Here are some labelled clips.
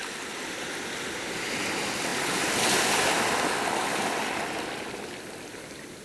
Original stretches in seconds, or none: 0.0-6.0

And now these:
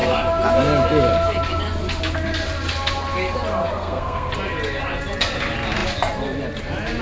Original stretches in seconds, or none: 0.0-3.6; 4.3-7.0

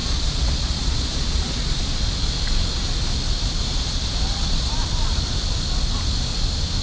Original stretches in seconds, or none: 1.8-3.6; 4.7-6.8

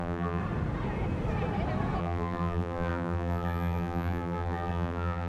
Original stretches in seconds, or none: 0.4-2.0